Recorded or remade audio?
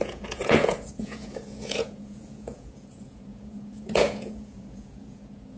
remade